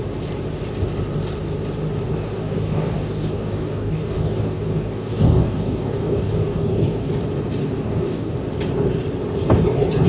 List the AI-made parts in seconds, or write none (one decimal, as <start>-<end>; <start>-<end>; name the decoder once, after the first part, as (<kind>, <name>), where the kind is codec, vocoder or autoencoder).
2.1-7.1 (codec, DAC); 7.6-8.3